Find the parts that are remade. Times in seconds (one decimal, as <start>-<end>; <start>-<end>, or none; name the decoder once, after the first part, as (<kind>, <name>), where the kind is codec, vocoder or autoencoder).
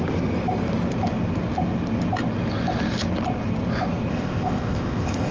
4.1-5.3 (codec, ZipCodec)